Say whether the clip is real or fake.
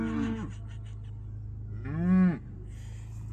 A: real